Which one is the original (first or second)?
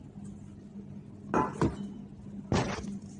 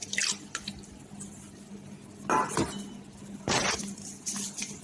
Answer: first